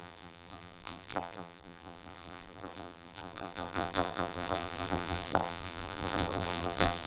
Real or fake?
fake